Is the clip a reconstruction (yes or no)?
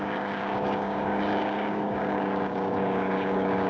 yes